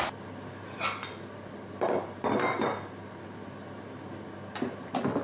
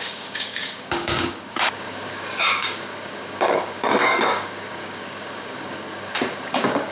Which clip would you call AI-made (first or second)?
second